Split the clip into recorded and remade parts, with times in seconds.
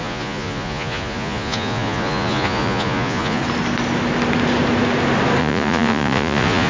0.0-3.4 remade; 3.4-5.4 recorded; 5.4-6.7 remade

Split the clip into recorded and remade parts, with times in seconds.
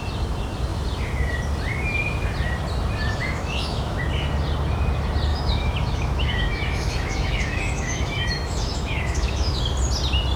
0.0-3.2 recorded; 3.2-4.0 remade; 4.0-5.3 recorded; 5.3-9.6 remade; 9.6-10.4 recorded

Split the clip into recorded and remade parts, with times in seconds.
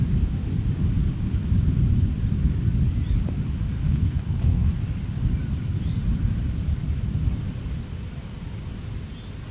0.0-3.8 recorded; 3.8-4.7 remade; 4.7-9.5 recorded